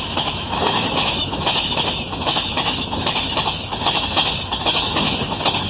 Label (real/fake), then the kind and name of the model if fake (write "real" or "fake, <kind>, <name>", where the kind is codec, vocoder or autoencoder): fake, autoencoder, DAC-VAE